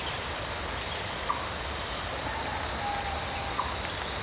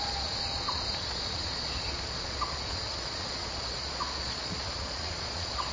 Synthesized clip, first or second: second